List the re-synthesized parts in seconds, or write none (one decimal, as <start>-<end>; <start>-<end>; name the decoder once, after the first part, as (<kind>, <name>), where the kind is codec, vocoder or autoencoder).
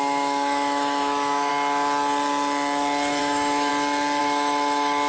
0.0-1.5 (autoencoder, DAC-VAE); 3.2-3.7; 4.2-5.1